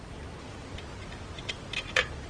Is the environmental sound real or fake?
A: real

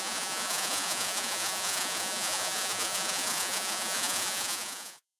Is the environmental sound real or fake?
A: fake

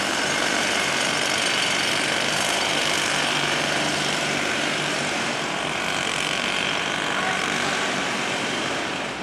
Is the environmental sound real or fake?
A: fake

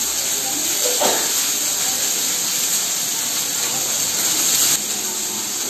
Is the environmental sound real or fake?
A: real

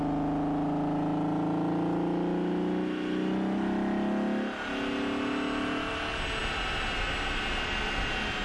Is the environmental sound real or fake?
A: real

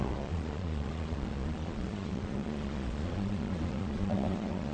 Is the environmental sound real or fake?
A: fake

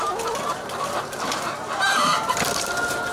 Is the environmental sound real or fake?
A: real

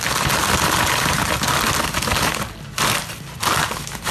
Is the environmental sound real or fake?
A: real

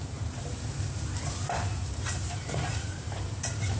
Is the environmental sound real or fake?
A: fake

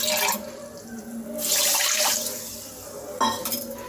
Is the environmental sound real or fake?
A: real